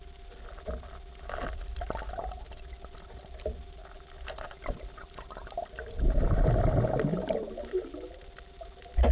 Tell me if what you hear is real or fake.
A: real